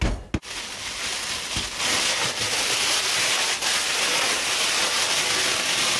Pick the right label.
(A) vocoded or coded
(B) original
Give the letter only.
B